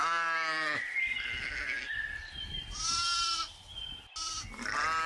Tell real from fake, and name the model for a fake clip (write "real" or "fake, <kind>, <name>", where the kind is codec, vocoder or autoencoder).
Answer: real